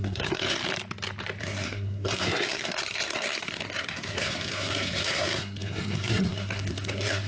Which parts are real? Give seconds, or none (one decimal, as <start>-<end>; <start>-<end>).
0.6-1.4